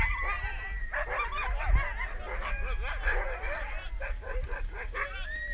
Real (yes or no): yes